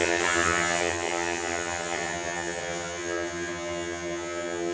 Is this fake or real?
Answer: fake